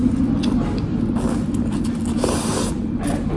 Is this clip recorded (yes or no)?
yes